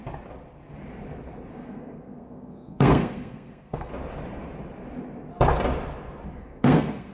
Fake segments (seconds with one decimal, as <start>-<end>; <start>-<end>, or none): 1.5-3.9; 6.4-7.1